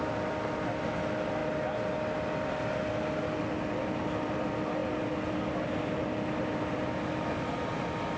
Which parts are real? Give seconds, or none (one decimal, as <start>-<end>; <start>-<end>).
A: 0.0-8.2